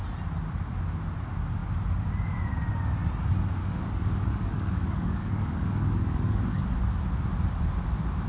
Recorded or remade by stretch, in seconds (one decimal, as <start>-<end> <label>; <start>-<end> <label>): 0.0-3.6 recorded; 3.6-6.6 remade; 6.6-8.3 recorded